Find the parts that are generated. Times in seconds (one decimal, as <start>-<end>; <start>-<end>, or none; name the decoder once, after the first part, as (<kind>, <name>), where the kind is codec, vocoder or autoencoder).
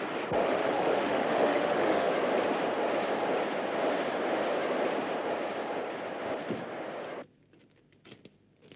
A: 0.4-2.1 (autoencoder, DAC-VAE)